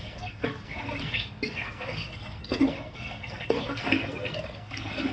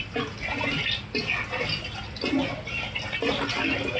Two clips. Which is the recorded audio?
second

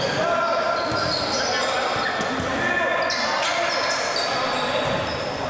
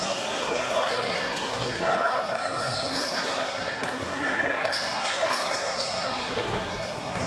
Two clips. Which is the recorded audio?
first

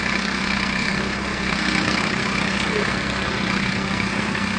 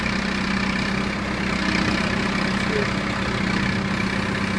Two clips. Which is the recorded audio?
second